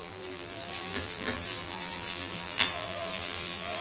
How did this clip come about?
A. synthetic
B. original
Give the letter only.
A